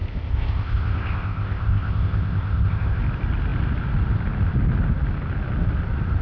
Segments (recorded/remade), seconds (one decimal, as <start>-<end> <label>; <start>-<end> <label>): 0.0-3.0 remade; 3.0-6.2 recorded